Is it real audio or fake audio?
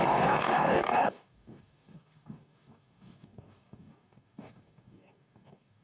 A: fake